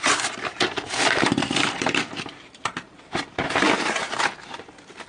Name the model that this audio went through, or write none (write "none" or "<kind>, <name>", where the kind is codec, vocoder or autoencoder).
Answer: vocoder, BigVGAN v2